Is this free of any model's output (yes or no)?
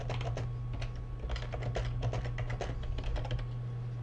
yes